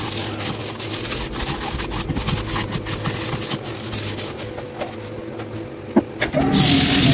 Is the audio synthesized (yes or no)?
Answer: no